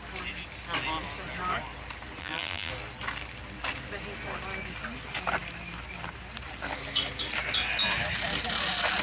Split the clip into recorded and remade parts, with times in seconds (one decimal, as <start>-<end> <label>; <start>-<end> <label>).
0.0-2.2 recorded; 2.2-2.7 remade; 2.7-9.0 recorded